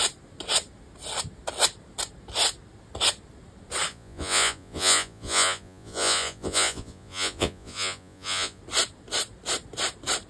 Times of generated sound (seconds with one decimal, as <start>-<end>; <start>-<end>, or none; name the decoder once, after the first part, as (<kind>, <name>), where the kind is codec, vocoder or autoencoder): 3.9-8.6 (vocoder, Vocos)